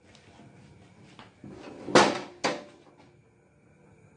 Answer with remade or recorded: recorded